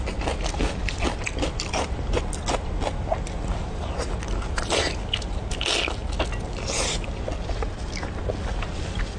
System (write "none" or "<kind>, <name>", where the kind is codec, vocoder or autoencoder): none